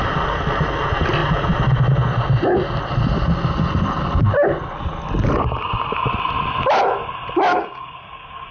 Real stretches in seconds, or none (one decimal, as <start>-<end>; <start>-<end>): 0.0-7.5